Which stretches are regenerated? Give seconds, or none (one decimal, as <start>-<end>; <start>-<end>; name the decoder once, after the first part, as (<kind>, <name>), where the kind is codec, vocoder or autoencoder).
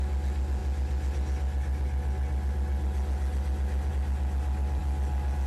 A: none